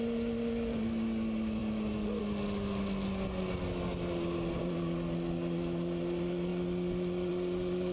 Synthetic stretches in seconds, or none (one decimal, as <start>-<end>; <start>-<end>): none